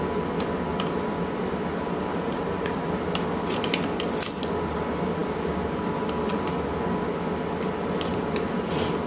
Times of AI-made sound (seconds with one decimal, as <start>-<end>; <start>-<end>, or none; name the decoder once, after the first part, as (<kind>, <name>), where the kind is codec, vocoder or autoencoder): 2.1-2.9 (vocoder, Vocos)